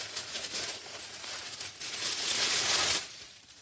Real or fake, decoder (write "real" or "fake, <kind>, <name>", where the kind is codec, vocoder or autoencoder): fake, vocoder, Vocos